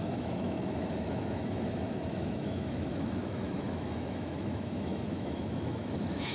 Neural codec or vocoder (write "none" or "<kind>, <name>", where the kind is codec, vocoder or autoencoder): autoencoder, DAC-VAE